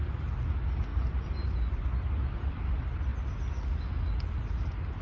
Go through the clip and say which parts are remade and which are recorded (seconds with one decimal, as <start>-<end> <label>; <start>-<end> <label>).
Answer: 0.0-0.9 recorded; 0.9-1.5 remade; 1.5-5.0 recorded